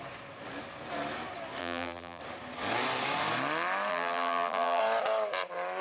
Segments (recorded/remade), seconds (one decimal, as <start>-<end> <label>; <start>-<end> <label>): 0.0-1.6 recorded; 1.6-2.2 remade; 2.2-3.9 recorded; 3.9-4.8 remade; 4.8-5.8 recorded